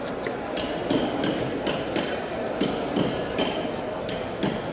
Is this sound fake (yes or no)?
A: no